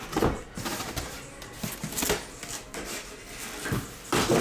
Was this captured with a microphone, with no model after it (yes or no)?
yes